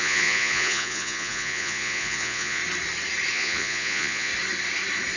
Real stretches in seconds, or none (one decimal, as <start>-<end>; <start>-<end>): 2.6-3.3; 4.3-5.2